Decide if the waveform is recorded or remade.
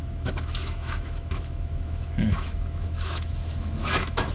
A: remade